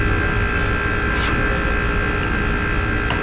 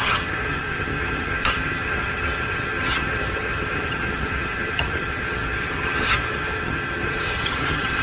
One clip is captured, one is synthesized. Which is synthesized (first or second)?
second